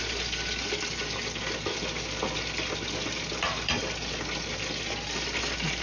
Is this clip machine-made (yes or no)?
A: no